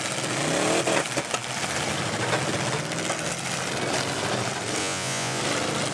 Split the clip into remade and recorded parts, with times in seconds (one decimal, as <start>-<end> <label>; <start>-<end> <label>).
0.0-4.8 recorded; 4.8-5.4 remade; 5.4-5.9 recorded